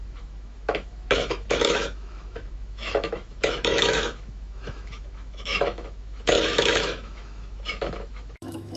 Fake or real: fake